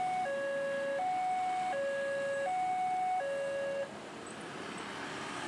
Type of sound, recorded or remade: recorded